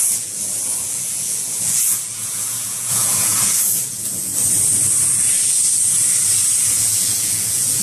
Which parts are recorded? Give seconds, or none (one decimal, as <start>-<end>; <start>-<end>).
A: 4.3-6.7